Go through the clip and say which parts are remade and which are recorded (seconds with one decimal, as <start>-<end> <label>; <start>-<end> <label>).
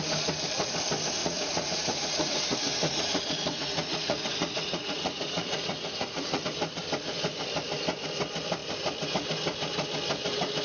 0.0-1.2 recorded; 1.2-6.4 remade; 6.4-10.6 recorded